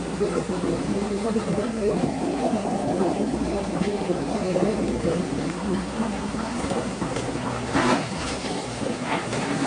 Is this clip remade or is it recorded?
remade